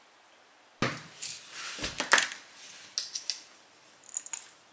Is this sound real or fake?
real